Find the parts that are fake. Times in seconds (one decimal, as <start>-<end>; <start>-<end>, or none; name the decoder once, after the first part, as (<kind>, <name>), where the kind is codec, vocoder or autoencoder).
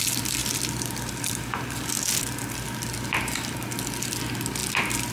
none